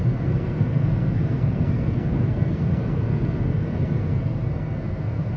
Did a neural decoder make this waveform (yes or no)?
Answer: yes